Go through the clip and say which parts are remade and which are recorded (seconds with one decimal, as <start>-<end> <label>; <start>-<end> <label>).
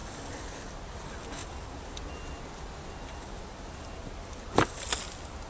0.0-5.5 recorded